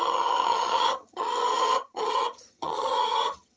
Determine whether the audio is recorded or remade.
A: remade